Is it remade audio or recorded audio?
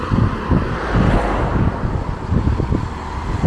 recorded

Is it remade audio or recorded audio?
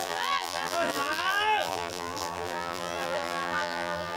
remade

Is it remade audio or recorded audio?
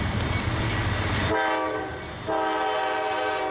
recorded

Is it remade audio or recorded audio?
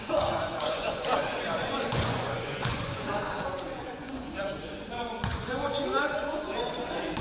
remade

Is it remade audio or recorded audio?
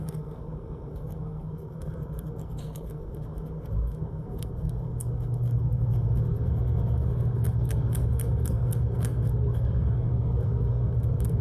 remade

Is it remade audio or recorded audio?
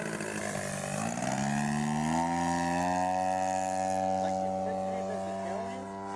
recorded